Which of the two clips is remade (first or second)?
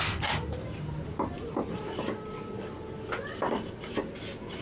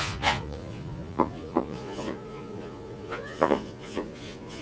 second